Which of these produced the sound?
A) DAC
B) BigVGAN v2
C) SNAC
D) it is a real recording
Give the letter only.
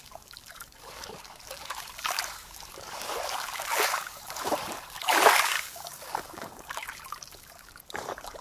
A